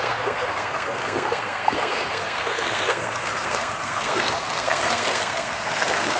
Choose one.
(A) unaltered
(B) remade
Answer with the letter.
B